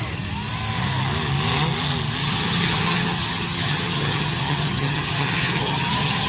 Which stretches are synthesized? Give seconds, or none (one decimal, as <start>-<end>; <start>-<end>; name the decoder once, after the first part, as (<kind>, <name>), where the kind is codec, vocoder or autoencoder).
2.2-6.3 (vocoder, HiFi-GAN)